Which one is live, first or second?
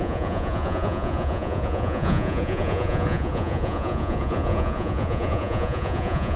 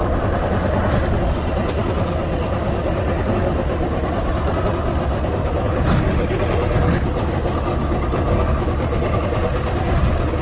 second